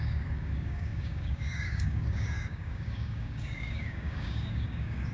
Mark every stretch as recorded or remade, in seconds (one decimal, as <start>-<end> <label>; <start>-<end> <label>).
0.0-5.1 remade